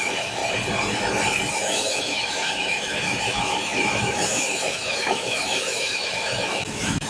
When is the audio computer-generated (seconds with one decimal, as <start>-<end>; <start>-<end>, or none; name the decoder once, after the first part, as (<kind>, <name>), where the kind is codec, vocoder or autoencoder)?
0.0-0.4 (autoencoder, DAC-VAE); 1.5-7.1